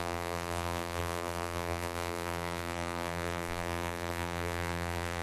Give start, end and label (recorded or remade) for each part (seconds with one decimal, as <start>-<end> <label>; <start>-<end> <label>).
0.0-5.2 remade